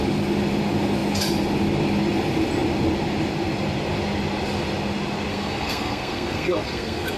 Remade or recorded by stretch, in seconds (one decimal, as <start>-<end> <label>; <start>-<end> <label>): 0.0-5.3 recorded; 5.3-7.2 remade